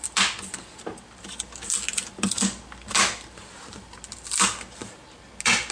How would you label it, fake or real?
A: real